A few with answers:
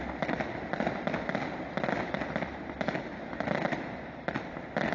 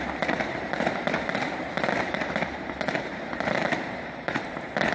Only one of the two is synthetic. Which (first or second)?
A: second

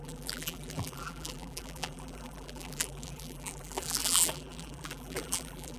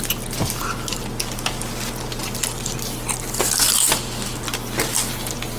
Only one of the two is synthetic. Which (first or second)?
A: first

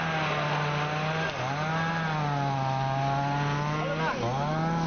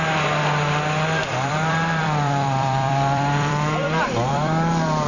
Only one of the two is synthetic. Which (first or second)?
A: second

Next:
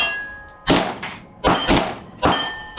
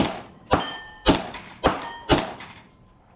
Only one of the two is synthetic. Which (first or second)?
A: second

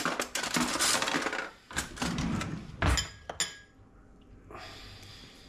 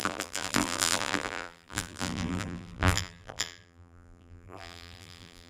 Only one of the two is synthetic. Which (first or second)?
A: second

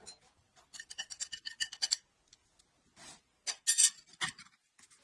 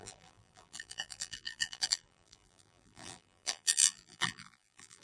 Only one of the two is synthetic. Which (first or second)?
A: second